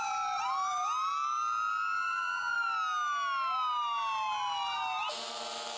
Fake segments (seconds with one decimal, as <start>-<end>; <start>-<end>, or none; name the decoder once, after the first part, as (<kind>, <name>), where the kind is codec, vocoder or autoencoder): 0.0-2.4 (vocoder, BigVGAN v2); 5.3-5.8